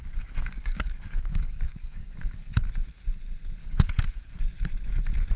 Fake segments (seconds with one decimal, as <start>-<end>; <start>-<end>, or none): 0.0-2.7; 3.6-4.4